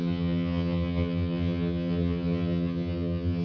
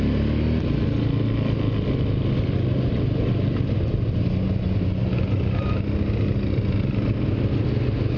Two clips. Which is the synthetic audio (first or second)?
first